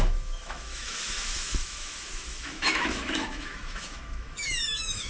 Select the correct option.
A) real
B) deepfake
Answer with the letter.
B